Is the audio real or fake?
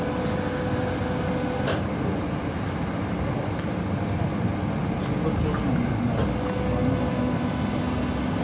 real